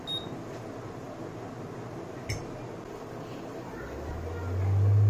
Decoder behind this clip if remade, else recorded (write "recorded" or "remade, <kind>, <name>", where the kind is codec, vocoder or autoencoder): recorded